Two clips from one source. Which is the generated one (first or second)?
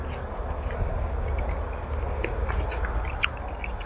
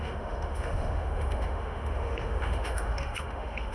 second